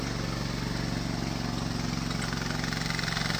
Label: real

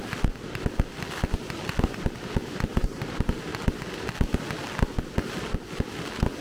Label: real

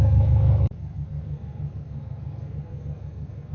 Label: fake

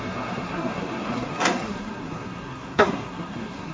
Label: fake